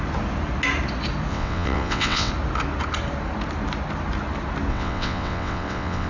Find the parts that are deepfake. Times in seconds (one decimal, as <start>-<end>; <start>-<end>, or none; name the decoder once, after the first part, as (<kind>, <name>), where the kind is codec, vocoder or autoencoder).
1.3-2.3 (vocoder, WaveNeXt); 4.7-6.1